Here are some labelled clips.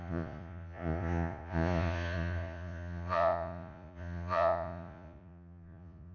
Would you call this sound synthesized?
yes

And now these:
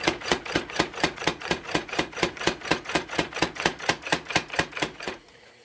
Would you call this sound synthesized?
yes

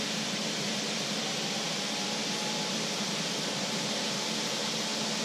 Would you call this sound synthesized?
no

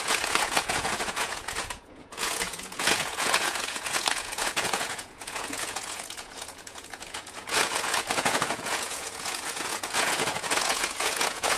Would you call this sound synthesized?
yes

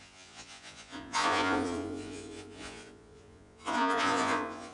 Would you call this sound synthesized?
yes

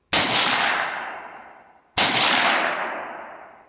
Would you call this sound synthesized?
no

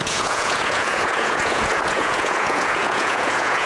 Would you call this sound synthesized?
yes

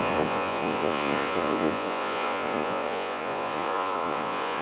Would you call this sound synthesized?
yes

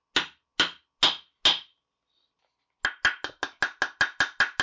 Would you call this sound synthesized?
no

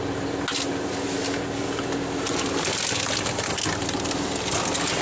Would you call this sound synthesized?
no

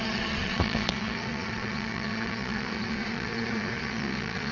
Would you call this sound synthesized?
yes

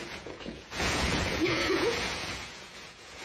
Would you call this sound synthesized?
yes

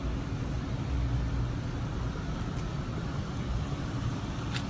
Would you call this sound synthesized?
no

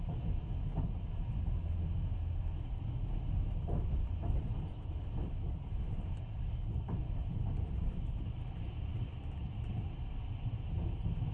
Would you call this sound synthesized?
no